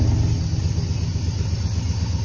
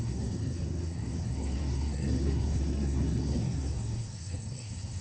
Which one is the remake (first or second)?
second